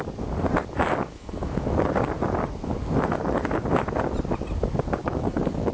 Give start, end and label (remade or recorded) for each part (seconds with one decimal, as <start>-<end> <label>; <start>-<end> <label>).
0.0-1.1 recorded; 1.1-1.9 remade; 1.9-5.0 recorded; 5.0-5.7 remade